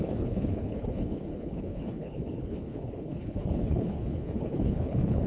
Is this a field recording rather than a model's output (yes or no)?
no